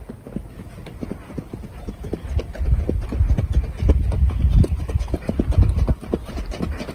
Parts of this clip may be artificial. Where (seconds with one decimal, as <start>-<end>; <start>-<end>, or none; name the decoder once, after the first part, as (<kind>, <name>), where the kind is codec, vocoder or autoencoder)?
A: 0.9-2.8 (vocoder, BigVGAN v2)